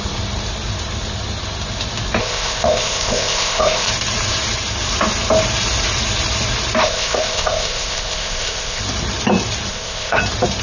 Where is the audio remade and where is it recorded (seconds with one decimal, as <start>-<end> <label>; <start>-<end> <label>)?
0.0-2.2 recorded; 2.2-3.9 remade; 3.9-6.8 recorded; 6.8-8.8 remade; 8.8-9.7 recorded; 9.7-10.2 remade; 10.2-10.6 recorded